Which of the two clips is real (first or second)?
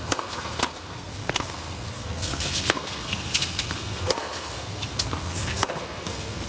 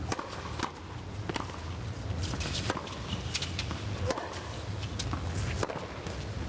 second